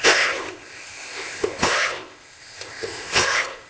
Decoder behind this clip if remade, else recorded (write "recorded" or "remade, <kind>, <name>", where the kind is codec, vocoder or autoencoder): remade, codec, ZipCodec